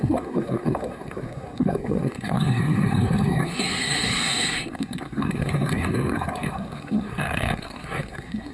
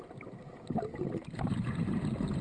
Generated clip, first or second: first